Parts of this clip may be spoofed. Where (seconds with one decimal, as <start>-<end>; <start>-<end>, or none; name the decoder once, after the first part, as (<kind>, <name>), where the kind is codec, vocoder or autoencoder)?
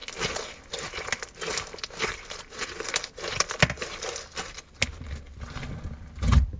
none